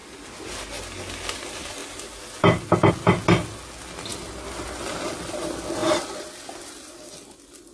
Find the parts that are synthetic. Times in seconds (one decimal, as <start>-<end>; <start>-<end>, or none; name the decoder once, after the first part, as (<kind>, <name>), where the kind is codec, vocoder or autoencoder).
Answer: none